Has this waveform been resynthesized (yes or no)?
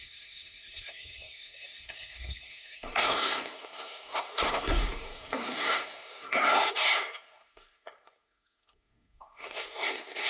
yes